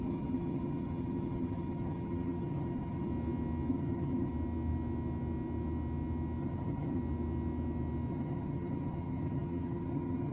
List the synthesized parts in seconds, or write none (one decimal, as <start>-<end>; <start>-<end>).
0.0-3.1; 3.7-4.3; 6.4-7.0; 8.1-10.3